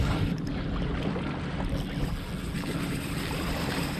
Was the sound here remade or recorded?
recorded